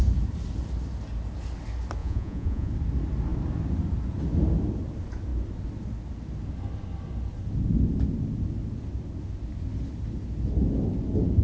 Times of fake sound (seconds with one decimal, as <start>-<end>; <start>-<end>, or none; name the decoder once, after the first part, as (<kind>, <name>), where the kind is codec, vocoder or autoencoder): 2.0-2.7 (vocoder, Vocos)